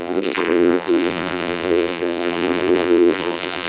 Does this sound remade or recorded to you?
remade